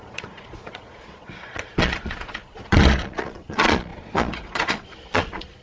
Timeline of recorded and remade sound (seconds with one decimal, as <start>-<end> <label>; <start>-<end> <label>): 0.0-5.6 remade